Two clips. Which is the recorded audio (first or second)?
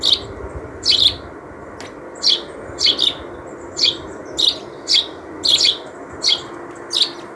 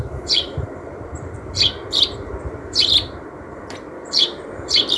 first